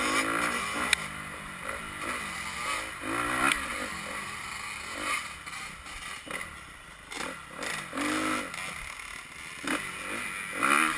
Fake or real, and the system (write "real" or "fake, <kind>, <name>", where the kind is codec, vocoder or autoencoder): real